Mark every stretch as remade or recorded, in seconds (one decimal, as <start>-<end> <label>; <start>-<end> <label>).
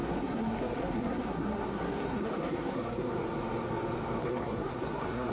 0.0-3.1 remade; 3.1-4.2 recorded; 4.2-5.3 remade